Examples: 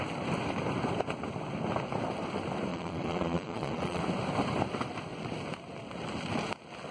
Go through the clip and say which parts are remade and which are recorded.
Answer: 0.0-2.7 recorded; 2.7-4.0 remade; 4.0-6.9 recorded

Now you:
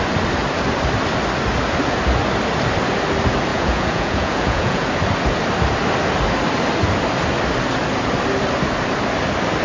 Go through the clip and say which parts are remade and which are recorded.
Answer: 0.0-3.5 recorded; 3.5-4.9 remade; 4.9-9.6 recorded

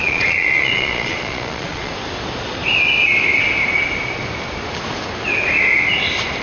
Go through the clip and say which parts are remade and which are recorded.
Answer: 0.0-1.9 remade; 1.9-6.4 recorded

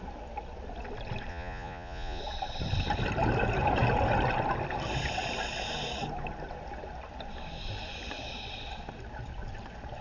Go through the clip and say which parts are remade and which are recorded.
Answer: 0.0-1.3 recorded; 1.3-2.2 remade; 2.2-10.0 recorded

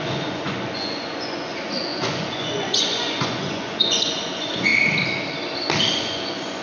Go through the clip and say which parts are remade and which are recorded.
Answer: 0.0-4.7 remade; 4.7-5.9 recorded; 5.9-6.6 remade

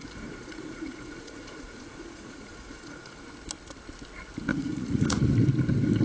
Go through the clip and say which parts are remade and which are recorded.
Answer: 0.0-3.2 remade; 3.2-4.5 recorded; 4.5-5.3 remade; 5.3-6.0 recorded